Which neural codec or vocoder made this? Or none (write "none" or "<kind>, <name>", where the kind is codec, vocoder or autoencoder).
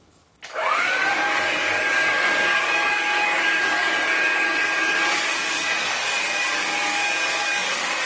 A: codec, DAC